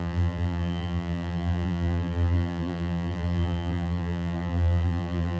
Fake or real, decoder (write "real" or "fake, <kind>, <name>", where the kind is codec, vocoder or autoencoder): fake, vocoder, BigVGAN v2